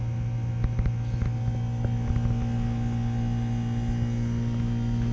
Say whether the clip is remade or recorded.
recorded